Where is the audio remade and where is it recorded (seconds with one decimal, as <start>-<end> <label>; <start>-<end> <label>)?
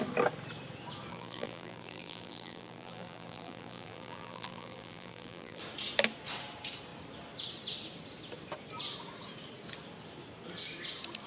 0.0-1.1 recorded; 1.1-5.6 remade; 5.6-11.3 recorded